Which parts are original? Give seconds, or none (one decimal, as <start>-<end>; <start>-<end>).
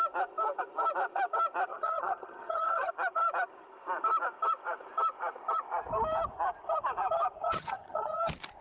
0.0-1.7; 2.9-7.4; 8.2-8.6